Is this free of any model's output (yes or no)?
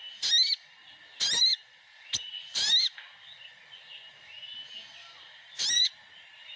yes